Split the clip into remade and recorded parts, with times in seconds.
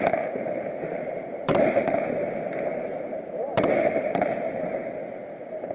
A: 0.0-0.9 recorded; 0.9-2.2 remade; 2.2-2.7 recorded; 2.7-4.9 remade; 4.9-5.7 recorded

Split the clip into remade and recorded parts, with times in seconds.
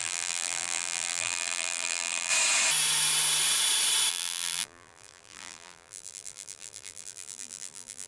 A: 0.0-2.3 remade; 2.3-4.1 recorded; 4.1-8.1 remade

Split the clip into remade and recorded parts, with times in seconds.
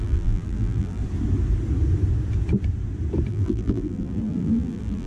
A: 0.0-1.0 remade; 1.0-3.3 recorded; 3.3-5.1 remade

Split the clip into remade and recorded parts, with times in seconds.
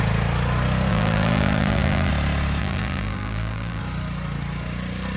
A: 0.0-0.9 recorded; 0.9-2.1 remade; 2.1-2.6 recorded; 2.6-3.8 remade; 3.8-5.2 recorded